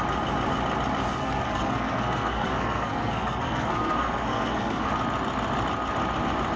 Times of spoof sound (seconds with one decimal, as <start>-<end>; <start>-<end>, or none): 1.2-4.9